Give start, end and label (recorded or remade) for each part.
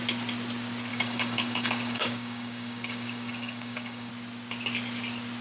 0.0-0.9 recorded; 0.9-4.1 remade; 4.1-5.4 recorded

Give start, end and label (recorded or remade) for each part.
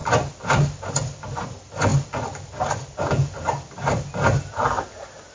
0.0-5.3 recorded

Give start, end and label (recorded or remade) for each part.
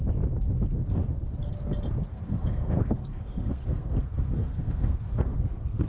0.0-2.1 recorded; 2.1-5.9 remade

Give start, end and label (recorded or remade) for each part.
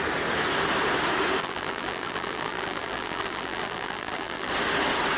0.0-1.4 recorded; 1.4-4.5 remade; 4.5-5.2 recorded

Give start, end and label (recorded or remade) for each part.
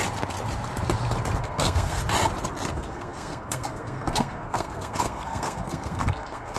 0.0-1.4 recorded; 1.4-2.0 remade; 2.0-2.7 recorded; 2.7-6.6 remade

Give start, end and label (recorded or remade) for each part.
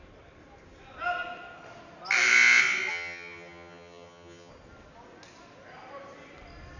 0.0-2.9 recorded; 2.9-4.5 remade; 4.5-6.8 recorded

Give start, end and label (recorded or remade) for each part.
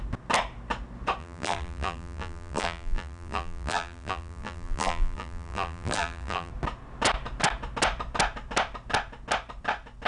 0.0-1.2 recorded; 1.2-6.5 remade; 6.5-10.1 recorded